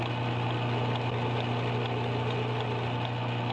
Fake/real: real